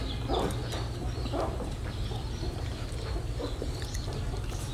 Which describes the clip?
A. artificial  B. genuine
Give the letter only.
B